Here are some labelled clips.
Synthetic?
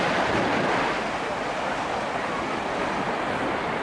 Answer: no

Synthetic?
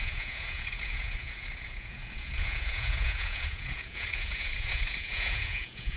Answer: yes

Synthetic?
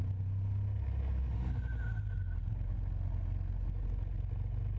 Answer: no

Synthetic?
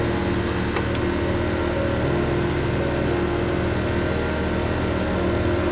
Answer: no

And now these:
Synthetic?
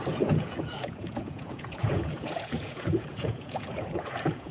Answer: yes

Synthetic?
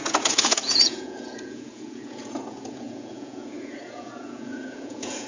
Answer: yes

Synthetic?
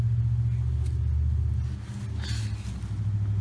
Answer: no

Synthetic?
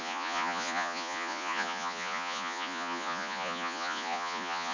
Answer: yes